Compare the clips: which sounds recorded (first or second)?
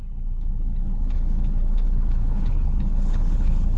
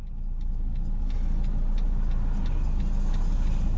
second